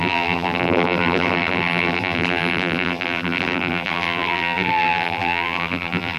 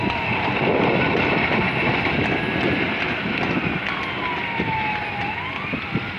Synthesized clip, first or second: first